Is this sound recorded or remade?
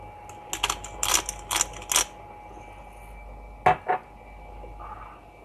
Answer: recorded